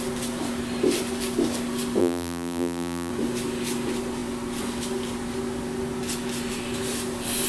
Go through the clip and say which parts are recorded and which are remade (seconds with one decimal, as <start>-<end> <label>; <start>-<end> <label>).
0.0-2.0 recorded; 2.0-3.1 remade; 3.1-7.5 recorded